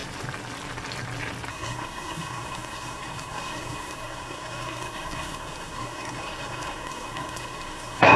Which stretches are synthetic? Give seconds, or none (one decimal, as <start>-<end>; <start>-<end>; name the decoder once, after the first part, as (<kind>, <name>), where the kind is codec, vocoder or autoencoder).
1.5-8.2 (codec, SNAC)